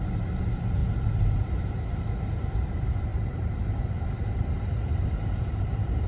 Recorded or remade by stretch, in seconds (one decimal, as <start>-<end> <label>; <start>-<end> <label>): 0.0-0.8 remade; 0.8-2.2 recorded; 2.2-6.1 remade